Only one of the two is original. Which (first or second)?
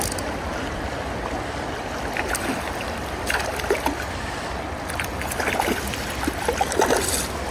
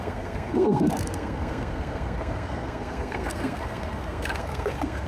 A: first